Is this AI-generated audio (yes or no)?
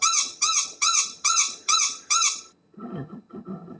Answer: yes